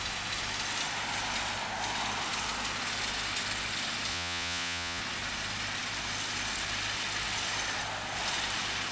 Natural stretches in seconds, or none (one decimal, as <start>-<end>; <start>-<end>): 0.0-4.1; 5.0-8.9

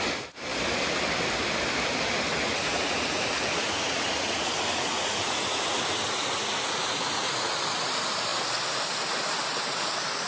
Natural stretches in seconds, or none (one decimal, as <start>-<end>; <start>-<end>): 0.0-2.3; 7.5-10.3

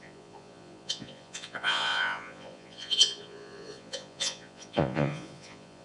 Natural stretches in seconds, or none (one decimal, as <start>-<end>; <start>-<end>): none

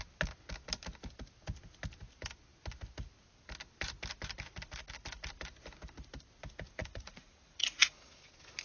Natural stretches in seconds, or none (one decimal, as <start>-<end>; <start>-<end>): 0.0-6.8; 8.2-8.6

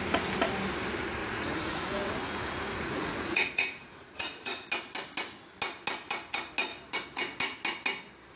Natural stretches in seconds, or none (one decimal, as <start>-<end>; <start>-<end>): 0.0-1.2; 4.7-8.4

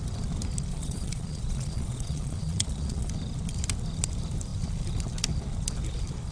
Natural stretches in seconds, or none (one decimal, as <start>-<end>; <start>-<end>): 0.0-0.7; 3.1-6.3

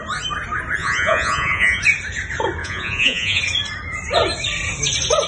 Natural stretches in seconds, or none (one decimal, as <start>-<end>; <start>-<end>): 0.0-0.8; 1.8-2.6; 3.4-5.3